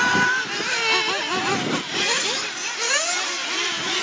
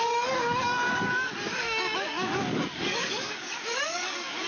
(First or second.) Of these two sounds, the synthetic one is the second